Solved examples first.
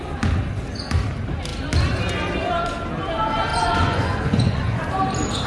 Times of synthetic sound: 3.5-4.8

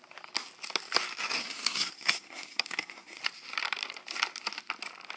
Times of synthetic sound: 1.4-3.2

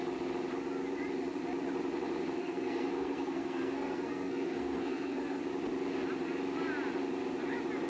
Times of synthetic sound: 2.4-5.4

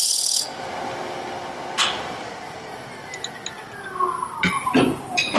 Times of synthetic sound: 2.2-2.7; 4.4-5.4